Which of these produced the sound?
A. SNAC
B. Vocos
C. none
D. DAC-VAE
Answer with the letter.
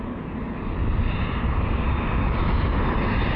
C